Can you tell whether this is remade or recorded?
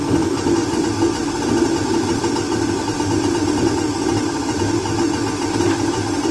recorded